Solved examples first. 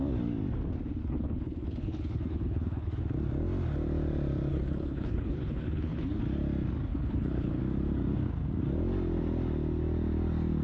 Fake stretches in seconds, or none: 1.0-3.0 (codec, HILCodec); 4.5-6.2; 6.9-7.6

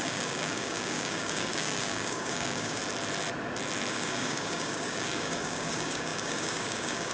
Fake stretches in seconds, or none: 0.0-2.8 (codec, DAC); 3.9-7.1

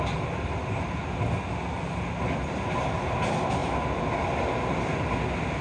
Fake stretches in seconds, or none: none

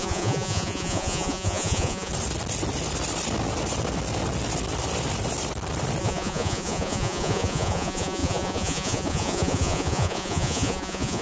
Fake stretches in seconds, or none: 0.0-2.1 (vocoder, Vocos); 6.0-11.2

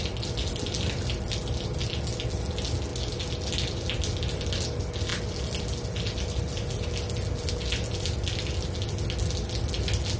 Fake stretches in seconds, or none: none

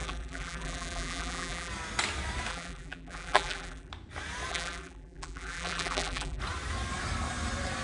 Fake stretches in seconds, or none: 0.0-1.7 (vocoder, BigVGAN v2); 2.5-3.9; 4.5-6.4